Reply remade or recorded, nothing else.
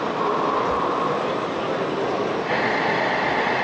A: recorded